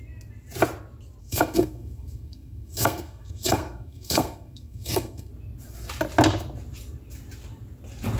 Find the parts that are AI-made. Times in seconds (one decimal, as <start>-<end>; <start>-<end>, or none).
1.2-5.3